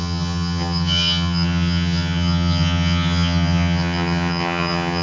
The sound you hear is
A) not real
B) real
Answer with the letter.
A